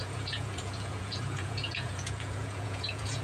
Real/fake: fake